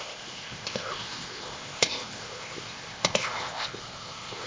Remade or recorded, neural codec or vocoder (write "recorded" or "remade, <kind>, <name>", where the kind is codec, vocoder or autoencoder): remade, codec, ZipCodec